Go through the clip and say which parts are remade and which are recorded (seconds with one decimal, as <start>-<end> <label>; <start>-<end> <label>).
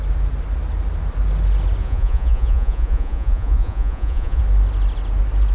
0.0-1.8 recorded; 1.8-4.4 remade; 4.4-5.5 recorded